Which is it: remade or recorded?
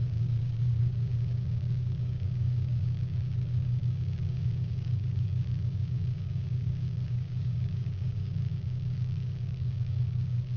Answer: remade